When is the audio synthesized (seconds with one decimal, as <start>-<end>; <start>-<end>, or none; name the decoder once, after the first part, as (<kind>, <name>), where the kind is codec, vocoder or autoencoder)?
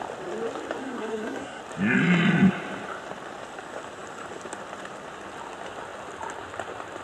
0.8-1.6 (codec, SNAC)